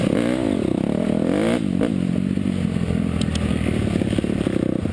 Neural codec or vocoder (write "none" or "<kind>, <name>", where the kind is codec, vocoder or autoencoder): none